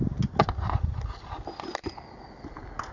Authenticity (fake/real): real